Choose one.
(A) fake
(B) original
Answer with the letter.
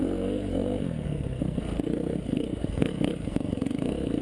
A